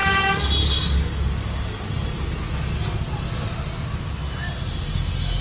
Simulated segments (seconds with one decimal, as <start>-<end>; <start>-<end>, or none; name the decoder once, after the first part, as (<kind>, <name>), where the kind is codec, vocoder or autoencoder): none

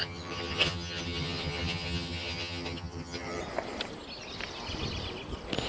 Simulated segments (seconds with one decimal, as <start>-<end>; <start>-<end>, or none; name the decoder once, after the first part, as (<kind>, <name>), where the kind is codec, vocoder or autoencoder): 0.0-3.4 (vocoder, HiFi-GAN)

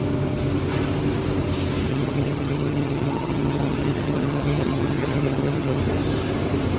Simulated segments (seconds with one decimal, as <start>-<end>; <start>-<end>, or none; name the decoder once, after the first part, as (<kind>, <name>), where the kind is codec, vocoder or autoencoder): 1.9-5.8 (vocoder, HiFi-GAN)